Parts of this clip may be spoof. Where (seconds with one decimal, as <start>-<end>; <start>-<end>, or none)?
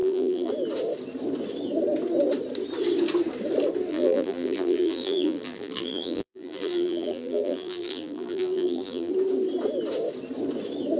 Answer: 0.0-0.5; 3.9-9.1